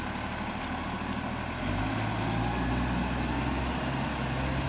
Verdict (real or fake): real